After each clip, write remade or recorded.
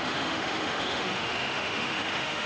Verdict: remade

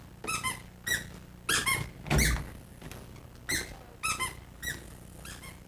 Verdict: recorded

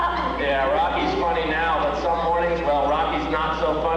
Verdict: recorded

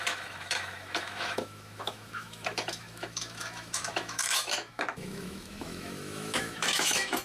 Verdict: remade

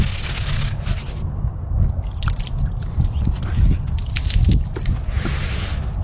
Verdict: recorded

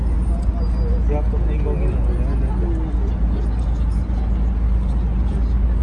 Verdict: recorded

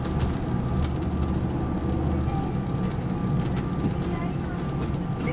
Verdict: recorded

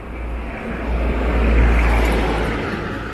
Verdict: recorded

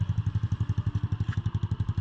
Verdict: recorded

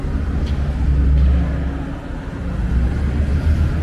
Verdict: recorded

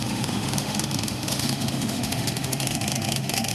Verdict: remade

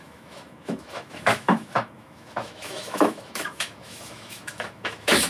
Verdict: remade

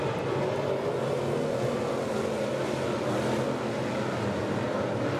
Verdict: recorded